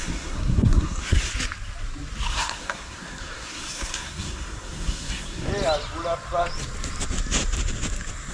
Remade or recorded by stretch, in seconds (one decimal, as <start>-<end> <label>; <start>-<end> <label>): 0.0-1.3 remade; 1.3-2.3 recorded; 2.3-5.5 remade; 5.5-8.3 recorded